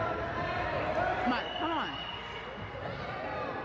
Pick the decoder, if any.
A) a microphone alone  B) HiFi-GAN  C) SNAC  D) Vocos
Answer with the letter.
A